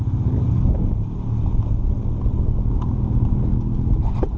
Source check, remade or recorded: recorded